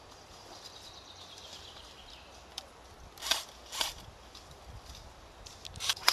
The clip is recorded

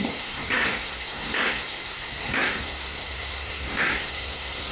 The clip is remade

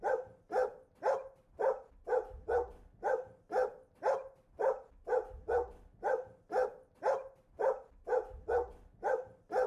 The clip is recorded